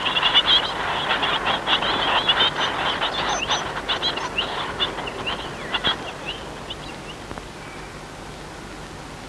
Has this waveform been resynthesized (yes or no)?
no